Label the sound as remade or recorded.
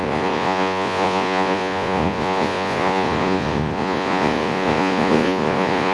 remade